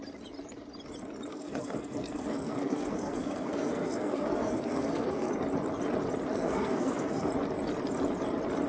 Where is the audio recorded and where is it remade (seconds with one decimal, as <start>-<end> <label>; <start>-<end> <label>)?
0.0-1.3 recorded; 1.3-5.3 remade; 5.3-6.3 recorded; 6.3-7.3 remade; 7.3-8.7 recorded